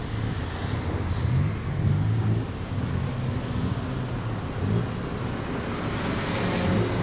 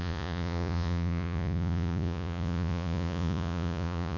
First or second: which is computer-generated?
second